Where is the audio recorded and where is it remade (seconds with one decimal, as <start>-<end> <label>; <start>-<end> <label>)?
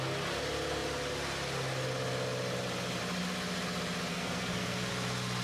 0.0-4.1 recorded; 4.1-4.9 remade; 4.9-5.4 recorded